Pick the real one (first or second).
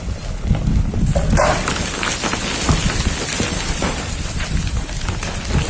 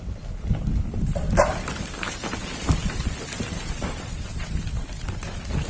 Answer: first